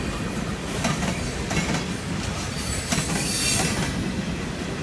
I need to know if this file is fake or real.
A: real